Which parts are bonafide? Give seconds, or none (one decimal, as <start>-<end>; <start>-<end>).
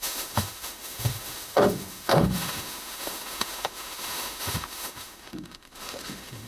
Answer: none